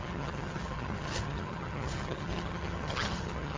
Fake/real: fake